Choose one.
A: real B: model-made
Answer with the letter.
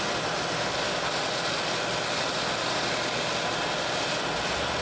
A